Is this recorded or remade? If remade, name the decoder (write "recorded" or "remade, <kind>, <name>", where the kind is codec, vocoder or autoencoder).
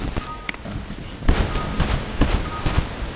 recorded